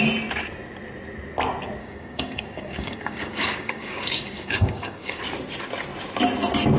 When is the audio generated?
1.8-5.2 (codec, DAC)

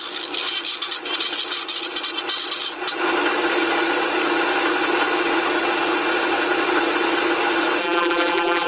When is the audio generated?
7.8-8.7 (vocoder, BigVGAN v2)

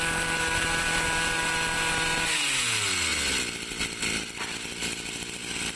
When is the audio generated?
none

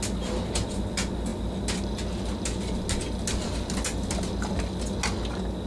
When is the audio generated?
none